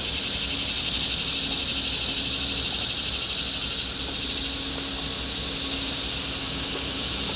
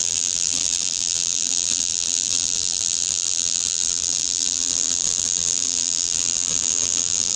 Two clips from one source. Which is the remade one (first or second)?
second